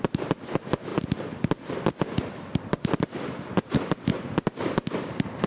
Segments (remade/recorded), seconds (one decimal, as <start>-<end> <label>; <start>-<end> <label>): 0.0-5.5 recorded